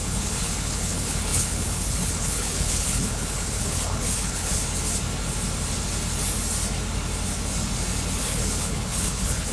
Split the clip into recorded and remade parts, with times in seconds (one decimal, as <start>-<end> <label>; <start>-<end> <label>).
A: 0.0-4.6 remade; 4.6-8.2 recorded; 8.2-9.5 remade